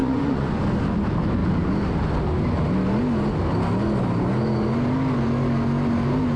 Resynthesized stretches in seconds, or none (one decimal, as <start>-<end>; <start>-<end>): 0.0-0.6